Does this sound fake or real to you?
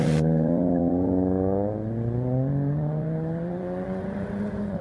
fake